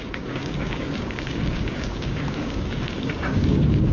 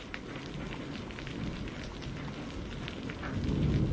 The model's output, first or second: first